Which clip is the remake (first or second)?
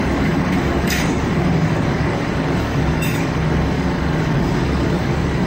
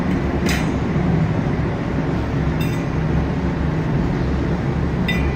first